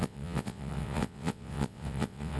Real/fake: fake